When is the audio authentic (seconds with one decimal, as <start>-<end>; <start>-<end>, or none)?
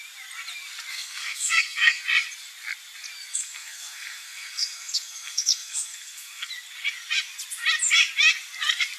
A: 0.0-0.9; 2.0-3.3; 6.5-9.0